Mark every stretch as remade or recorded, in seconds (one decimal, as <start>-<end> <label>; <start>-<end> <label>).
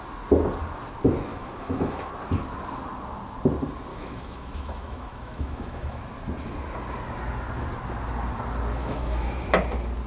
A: 0.0-1.3 recorded; 1.3-2.1 remade; 2.1-3.9 recorded; 3.9-6.0 remade; 6.0-8.8 recorded; 8.8-9.5 remade; 9.5-10.1 recorded